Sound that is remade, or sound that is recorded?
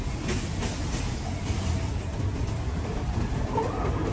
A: recorded